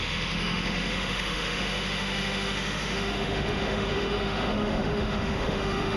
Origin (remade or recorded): remade